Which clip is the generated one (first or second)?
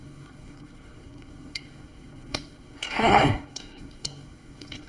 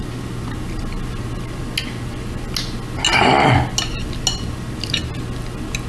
first